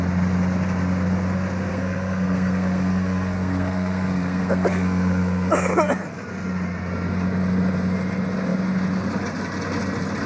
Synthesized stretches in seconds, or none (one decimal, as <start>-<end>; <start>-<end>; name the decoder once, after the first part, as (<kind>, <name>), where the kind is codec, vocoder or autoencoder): 1.7-5.5 (codec, SNAC)